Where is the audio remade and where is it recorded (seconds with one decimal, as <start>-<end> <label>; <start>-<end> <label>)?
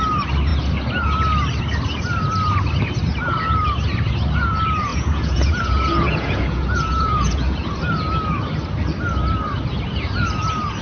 0.0-4.9 recorded; 4.9-7.7 remade; 7.7-10.8 recorded